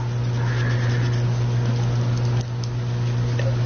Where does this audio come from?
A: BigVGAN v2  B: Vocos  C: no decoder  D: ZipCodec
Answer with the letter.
C